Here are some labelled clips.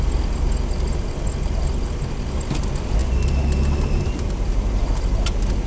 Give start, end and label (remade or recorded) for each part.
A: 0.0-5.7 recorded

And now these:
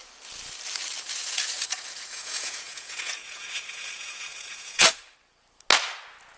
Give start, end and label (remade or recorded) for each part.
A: 0.0-1.2 recorded; 1.2-5.0 remade; 5.0-6.4 recorded

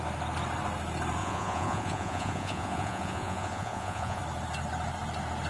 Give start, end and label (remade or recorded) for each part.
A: 0.0-1.2 recorded; 1.2-4.2 remade; 4.2-5.5 recorded

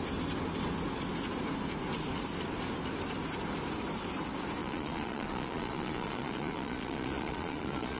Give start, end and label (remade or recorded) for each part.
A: 0.0-4.6 recorded; 4.6-8.0 remade

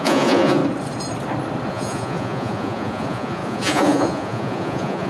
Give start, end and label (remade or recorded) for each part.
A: 0.0-0.6 remade; 0.6-1.7 recorded; 1.7-5.1 remade